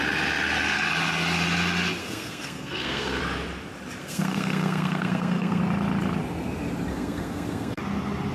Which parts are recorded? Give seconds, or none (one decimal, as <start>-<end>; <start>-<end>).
0.0-2.0; 3.2-4.0; 5.6-6.9; 7.8-8.3